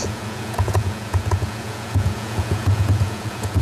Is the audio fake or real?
fake